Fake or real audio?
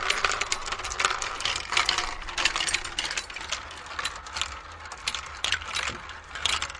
real